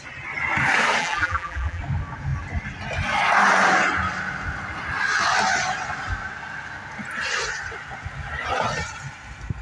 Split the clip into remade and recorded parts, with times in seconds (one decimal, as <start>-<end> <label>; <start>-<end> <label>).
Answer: 0.0-1.0 recorded; 1.0-1.8 remade; 1.8-9.6 recorded